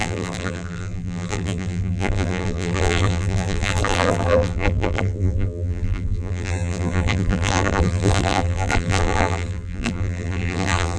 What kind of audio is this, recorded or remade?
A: remade